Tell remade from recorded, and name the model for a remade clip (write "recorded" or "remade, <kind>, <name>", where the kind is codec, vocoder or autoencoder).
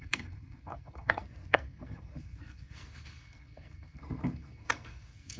remade, codec, SNAC